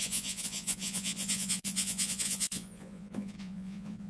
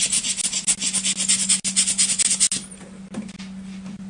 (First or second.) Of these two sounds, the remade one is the first